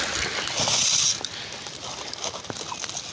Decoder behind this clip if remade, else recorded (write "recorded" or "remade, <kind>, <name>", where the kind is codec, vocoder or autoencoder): recorded